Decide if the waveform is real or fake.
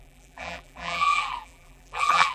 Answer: fake